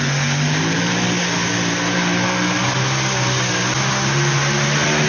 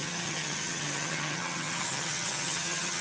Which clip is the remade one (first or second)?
second